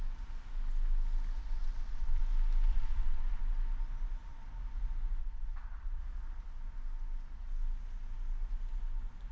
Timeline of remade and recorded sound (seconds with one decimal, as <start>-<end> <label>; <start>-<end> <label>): 0.0-1.4 recorded; 1.4-2.2 remade; 2.2-2.7 recorded; 2.7-3.4 remade; 3.4-5.2 recorded; 5.2-6.0 remade; 6.0-9.3 recorded